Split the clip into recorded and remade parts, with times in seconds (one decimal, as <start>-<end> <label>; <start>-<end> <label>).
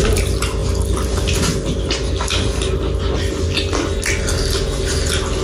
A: 0.0-5.4 recorded